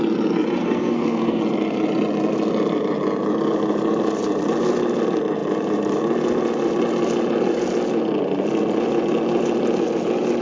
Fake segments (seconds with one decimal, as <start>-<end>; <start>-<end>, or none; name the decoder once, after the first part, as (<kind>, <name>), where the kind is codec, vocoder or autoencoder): 0.6-1.4 (codec, SNAC)